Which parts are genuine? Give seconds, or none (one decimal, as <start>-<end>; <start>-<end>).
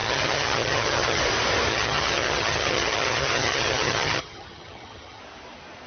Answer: 1.2-1.7; 5.2-5.9